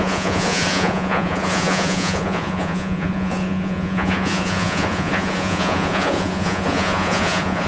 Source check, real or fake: fake